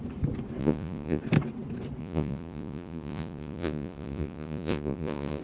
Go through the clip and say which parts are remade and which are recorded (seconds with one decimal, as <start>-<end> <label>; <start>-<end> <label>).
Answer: 0.0-0.6 recorded; 0.6-1.2 remade; 1.2-2.0 recorded; 2.0-5.4 remade